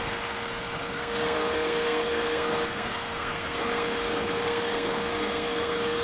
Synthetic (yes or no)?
yes